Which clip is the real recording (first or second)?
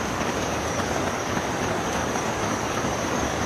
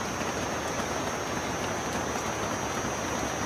second